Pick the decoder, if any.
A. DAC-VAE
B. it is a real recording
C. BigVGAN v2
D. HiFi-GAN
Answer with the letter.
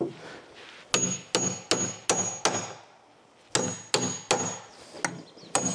B